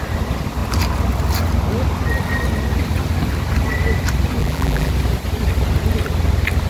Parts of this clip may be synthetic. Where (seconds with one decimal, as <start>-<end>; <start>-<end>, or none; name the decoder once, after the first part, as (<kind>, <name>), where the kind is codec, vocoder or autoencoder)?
4.4-4.9 (vocoder, BigVGAN v2)